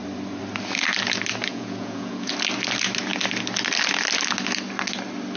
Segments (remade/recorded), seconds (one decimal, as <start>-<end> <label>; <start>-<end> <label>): 0.0-1.5 recorded; 1.5-2.3 remade; 2.3-5.4 recorded